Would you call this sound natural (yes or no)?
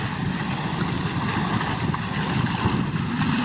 yes